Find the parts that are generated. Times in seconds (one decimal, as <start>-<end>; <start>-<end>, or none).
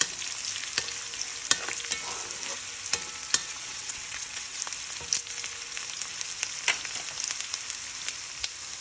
3.4-4.6